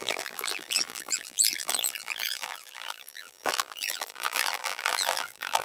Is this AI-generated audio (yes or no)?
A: yes